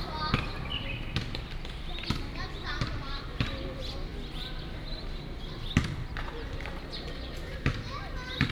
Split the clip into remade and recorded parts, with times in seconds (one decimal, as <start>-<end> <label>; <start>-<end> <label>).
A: 0.0-8.5 recorded